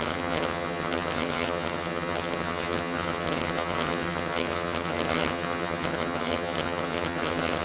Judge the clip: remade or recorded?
remade